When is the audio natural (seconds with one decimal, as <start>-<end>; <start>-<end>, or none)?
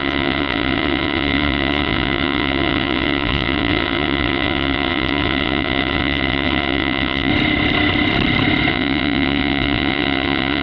7.3-8.7